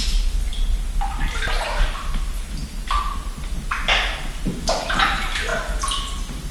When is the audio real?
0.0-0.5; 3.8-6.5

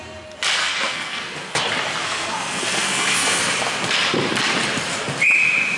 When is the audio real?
0.0-0.6; 1.6-2.0; 3.4-5.8

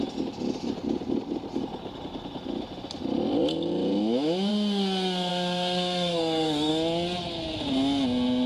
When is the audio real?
0.0-5.3; 6.7-8.5

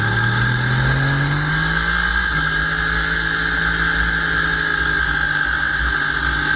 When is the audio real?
0.0-6.6

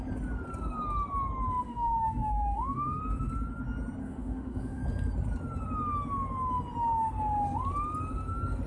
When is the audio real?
0.0-1.6; 3.0-4.0; 4.8-8.7

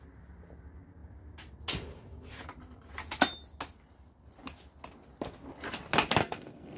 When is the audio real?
0.0-6.2

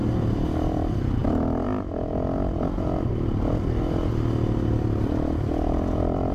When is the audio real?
0.0-6.3